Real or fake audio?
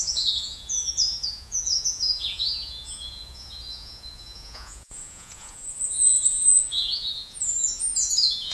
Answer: fake